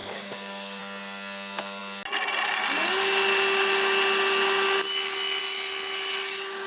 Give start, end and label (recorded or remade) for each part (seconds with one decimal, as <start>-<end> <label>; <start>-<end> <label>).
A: 0.0-0.8 remade; 0.8-6.7 recorded